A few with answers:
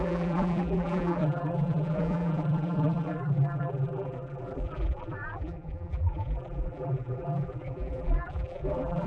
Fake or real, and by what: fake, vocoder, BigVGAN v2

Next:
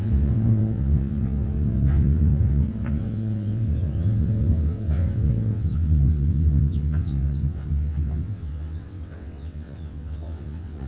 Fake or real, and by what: fake, vocoder, WaveNeXt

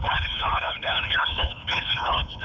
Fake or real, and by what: fake, codec, HILCodec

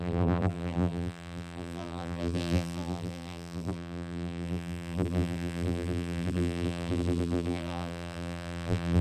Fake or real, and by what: fake, vocoder, BigVGAN v2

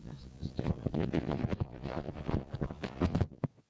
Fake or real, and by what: fake, vocoder, Vocos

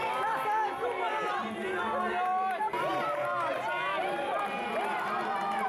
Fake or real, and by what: real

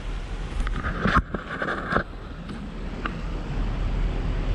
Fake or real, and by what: real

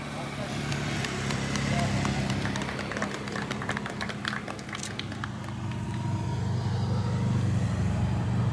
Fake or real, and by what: real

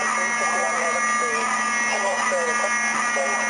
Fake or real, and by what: real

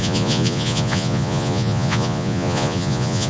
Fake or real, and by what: fake, vocoder, Vocos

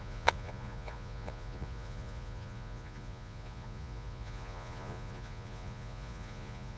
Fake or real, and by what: fake, vocoder, Vocos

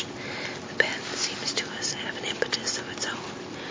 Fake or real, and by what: real